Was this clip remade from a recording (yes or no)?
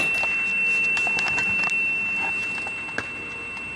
no